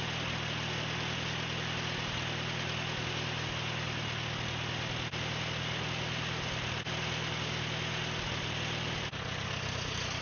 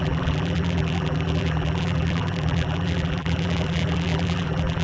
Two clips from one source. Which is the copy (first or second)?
second